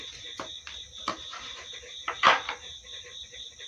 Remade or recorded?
remade